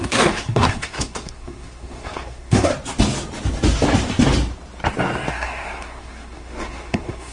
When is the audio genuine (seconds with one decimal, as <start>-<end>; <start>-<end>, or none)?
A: 2.7-5.3